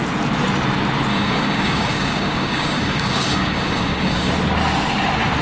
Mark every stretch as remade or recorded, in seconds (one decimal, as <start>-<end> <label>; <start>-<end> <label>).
0.0-1.1 recorded; 1.1-4.3 remade; 4.3-5.4 recorded